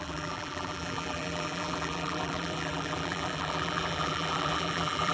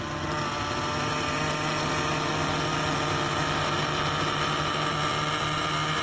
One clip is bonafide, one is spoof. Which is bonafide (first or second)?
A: second